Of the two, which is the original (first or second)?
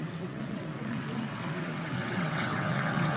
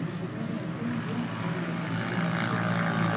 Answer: second